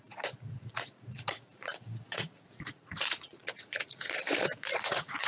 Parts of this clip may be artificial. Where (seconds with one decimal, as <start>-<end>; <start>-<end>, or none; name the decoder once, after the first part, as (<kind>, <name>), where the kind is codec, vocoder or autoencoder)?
0.0-5.3 (vocoder, Vocos)